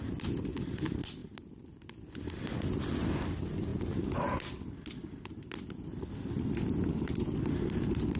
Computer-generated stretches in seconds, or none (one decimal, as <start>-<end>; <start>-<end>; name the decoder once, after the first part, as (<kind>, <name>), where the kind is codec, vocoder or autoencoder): none